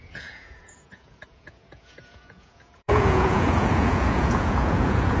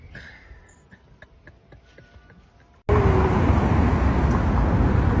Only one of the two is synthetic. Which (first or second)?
first